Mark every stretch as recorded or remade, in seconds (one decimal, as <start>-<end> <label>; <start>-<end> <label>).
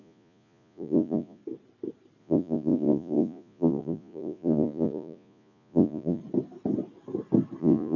0.0-1.4 remade; 1.4-2.2 recorded; 2.2-6.2 remade; 6.2-7.6 recorded; 7.6-8.0 remade